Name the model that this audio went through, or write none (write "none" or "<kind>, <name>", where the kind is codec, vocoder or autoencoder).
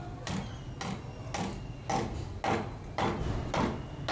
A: none